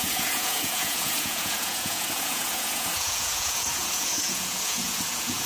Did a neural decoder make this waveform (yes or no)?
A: yes